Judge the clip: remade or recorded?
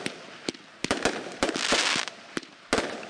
recorded